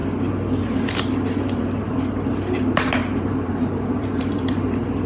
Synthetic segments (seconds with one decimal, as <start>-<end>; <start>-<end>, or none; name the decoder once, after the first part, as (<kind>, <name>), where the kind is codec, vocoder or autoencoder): 3.0-4.6 (vocoder, BigVGAN v2)